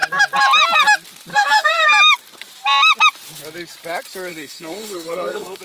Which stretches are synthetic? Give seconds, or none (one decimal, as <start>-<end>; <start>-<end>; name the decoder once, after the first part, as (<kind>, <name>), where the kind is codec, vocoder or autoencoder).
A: 1.3-1.9 (codec, SNAC); 4.3-5.6